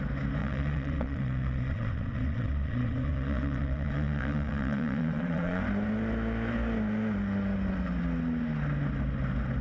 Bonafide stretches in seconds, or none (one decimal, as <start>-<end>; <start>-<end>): 0.0-0.4; 5.6-9.6